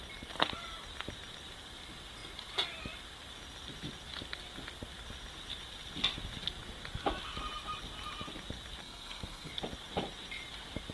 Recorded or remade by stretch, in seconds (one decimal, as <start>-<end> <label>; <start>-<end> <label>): 0.0-8.8 recorded; 8.8-9.5 remade; 9.5-10.9 recorded